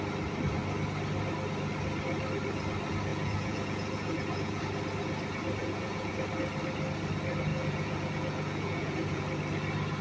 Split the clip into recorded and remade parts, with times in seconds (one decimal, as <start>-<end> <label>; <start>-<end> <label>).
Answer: 0.0-3.1 recorded; 3.1-4.6 remade; 4.6-5.6 recorded; 5.6-6.1 remade; 6.1-7.5 recorded; 7.5-9.2 remade; 9.2-10.0 recorded